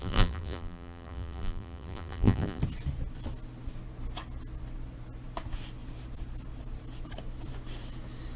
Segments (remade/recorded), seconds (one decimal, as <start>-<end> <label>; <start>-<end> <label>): 0.0-2.6 remade; 2.6-8.4 recorded